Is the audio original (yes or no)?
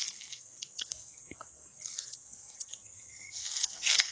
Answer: no